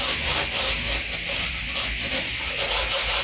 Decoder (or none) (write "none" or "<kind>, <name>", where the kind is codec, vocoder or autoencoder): none